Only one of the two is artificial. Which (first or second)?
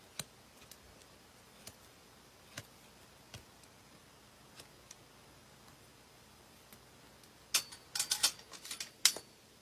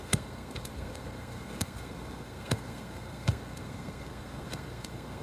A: second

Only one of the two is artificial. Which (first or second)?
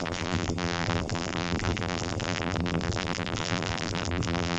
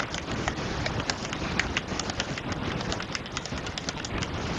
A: first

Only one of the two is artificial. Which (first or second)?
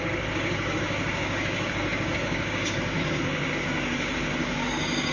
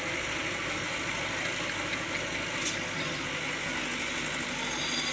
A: first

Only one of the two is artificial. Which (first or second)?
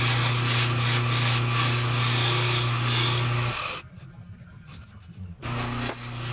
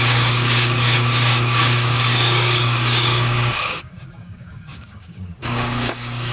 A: second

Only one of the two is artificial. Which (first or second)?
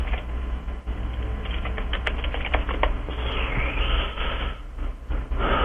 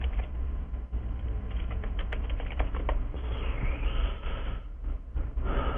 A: second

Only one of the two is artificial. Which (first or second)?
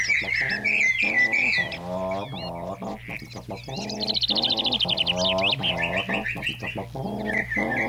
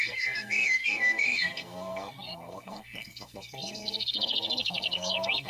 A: second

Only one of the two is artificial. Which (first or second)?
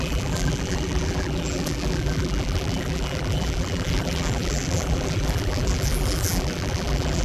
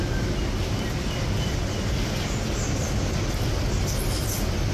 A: first